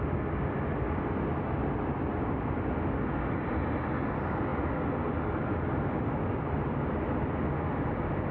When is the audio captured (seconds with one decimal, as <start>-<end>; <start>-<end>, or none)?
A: 0.0-8.3